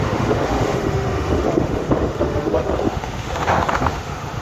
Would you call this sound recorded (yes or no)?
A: no